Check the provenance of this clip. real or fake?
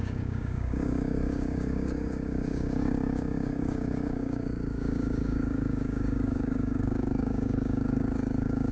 fake